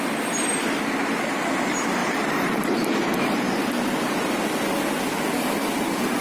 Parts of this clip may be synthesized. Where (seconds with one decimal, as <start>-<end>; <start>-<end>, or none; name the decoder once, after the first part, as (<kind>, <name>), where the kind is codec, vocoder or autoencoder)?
2.0-4.5 (vocoder, BigVGAN v2)

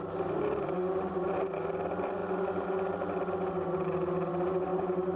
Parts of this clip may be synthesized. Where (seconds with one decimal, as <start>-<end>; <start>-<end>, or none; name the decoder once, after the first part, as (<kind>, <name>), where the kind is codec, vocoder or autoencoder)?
4.7-5.2 (vocoder, BigVGAN v2)

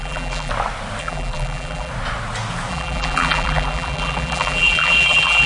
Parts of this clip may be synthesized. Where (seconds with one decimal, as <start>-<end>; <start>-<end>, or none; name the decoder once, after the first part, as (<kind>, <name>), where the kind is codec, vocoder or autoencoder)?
0.0-0.5 (vocoder, BigVGAN v2); 1.0-1.9; 2.7-5.5

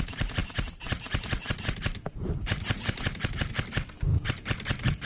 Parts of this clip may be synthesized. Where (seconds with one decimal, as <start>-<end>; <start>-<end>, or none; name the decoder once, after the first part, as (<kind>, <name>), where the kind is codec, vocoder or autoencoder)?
0.4-3.5 (vocoder, BigVGAN v2); 4.1-5.1

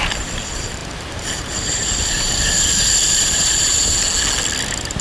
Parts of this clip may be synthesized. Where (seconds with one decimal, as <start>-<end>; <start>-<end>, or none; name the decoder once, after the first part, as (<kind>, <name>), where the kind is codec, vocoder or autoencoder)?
0.0-3.7 (vocoder, BigVGAN v2)

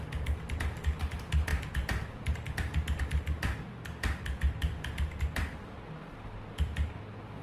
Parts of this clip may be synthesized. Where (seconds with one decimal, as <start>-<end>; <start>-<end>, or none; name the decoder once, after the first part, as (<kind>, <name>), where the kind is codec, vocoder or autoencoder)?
none